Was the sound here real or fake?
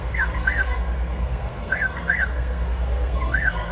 fake